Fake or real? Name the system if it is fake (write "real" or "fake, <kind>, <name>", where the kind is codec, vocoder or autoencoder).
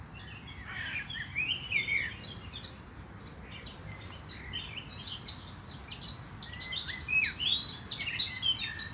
real